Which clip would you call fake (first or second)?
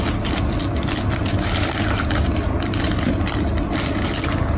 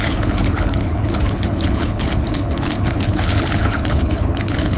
second